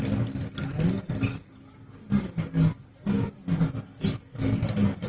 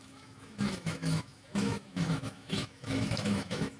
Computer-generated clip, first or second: second